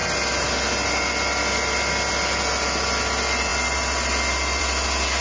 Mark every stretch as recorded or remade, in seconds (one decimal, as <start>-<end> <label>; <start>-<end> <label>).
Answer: 0.0-5.2 recorded